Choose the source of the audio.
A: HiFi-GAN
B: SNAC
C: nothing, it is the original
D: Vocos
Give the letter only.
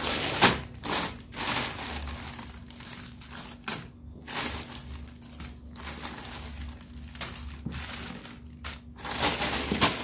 C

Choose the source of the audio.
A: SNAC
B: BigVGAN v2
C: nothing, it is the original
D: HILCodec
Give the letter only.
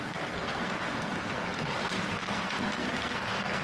A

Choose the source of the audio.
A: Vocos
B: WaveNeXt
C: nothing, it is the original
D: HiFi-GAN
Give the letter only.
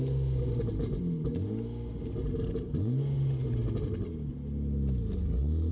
C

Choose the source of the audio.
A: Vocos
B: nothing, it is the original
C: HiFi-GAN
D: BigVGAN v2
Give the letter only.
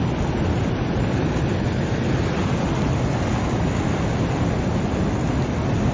B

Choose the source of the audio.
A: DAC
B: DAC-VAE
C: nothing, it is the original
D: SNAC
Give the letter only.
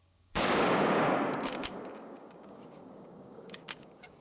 A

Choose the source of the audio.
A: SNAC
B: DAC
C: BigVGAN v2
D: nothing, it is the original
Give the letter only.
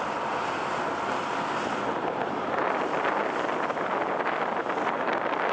D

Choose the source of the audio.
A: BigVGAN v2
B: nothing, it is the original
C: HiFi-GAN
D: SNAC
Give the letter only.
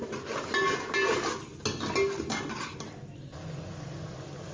B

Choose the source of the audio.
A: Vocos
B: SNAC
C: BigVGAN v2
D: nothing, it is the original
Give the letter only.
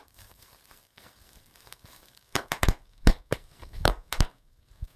B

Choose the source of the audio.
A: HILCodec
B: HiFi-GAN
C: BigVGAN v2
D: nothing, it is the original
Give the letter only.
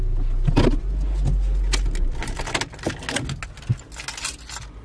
D